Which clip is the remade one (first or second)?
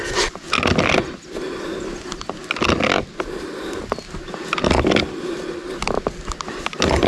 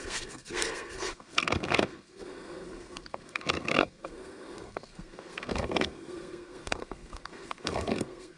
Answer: second